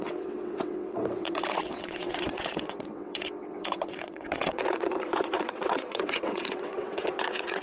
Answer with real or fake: fake